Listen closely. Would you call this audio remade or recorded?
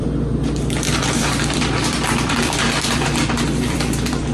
remade